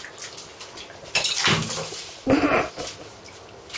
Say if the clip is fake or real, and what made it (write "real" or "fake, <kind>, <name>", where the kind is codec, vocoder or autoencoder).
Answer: real